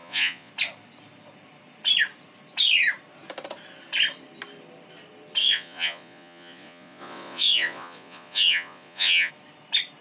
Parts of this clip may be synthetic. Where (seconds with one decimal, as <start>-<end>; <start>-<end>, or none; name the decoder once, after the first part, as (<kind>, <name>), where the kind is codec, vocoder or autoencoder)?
0.0-0.5 (vocoder, Vocos); 5.4-9.3